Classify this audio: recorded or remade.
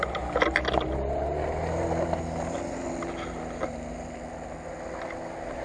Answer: recorded